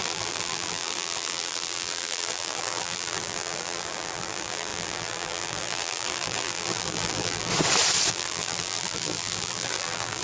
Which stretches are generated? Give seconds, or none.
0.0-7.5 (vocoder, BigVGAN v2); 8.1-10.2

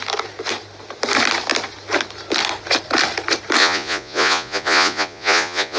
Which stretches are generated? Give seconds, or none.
3.6-5.8 (vocoder, Vocos)